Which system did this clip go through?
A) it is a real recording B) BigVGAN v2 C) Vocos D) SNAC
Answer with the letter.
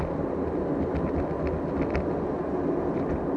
A